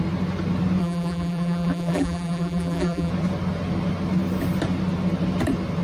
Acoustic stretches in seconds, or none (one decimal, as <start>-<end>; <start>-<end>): 0.0-0.8; 3.1-5.8